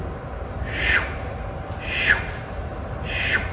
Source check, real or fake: real